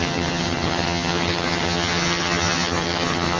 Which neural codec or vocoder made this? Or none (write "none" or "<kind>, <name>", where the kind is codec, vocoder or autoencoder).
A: vocoder, HiFi-GAN